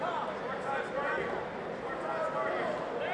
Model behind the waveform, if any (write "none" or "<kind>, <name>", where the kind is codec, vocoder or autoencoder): none